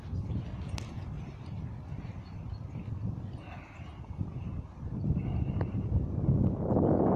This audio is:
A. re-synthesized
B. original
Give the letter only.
B